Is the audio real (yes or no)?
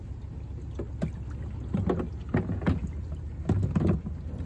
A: yes